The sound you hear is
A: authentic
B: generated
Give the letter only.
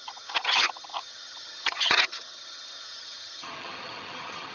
B